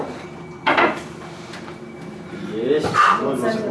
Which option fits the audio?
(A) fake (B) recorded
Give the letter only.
B